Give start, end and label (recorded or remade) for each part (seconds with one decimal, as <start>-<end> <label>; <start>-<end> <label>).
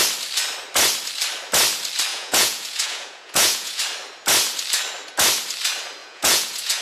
0.0-2.1 recorded; 2.1-3.8 remade; 3.8-6.0 recorded; 6.0-6.8 remade